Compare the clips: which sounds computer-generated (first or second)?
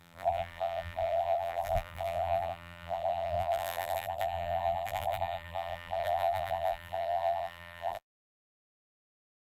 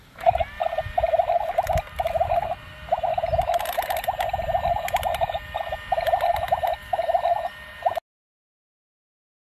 first